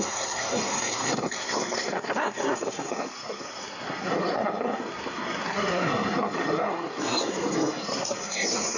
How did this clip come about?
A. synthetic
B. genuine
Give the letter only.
A